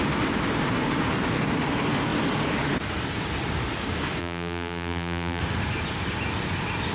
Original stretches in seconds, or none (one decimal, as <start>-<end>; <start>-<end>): 0.0-4.2; 5.4-6.9